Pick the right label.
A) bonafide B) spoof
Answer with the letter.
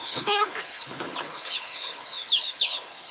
B